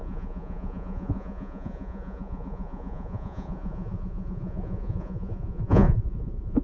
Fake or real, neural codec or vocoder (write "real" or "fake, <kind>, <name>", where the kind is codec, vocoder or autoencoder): fake, vocoder, Vocos